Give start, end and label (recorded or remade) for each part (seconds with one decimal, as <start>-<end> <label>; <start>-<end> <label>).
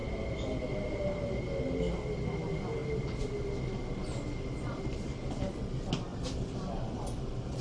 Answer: 0.0-6.1 recorded; 6.1-6.7 remade; 6.7-7.6 recorded